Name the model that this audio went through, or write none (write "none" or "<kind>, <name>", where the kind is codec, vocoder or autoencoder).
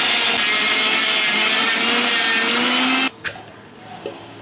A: none